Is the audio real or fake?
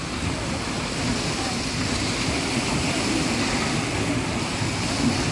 real